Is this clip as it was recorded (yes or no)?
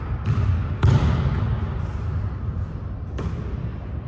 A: yes